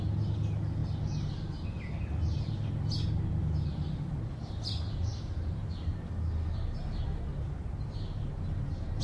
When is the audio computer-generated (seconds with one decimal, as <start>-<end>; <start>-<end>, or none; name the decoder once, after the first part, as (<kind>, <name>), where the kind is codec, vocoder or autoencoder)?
none